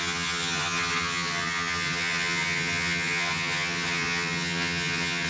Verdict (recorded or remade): remade